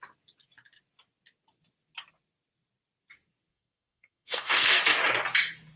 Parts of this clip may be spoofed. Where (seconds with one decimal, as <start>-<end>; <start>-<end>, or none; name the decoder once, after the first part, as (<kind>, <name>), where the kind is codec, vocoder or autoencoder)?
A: 3.5-4.8 (codec, SNAC)